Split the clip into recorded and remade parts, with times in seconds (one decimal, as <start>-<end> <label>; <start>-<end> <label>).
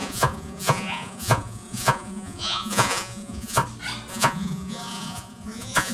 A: 0.0-3.6 remade; 3.6-4.1 recorded; 4.1-5.9 remade